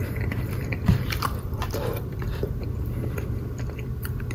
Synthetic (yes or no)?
yes